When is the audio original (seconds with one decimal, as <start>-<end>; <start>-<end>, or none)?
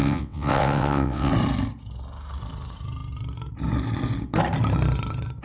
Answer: 1.3-5.4